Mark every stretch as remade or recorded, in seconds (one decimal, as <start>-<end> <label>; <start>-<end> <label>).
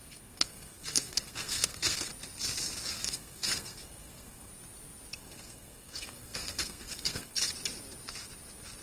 0.0-2.1 remade; 2.1-2.9 recorded; 2.9-4.5 remade; 4.5-5.1 recorded; 5.1-7.5 remade; 7.5-8.8 recorded